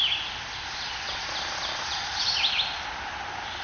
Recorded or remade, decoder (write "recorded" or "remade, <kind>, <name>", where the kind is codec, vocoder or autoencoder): recorded